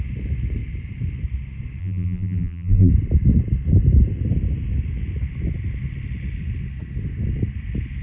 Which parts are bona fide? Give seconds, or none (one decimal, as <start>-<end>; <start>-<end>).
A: 0.0-1.8; 2.9-8.0